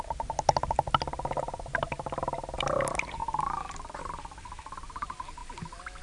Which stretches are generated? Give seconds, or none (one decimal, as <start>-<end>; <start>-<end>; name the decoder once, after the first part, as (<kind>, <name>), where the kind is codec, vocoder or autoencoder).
none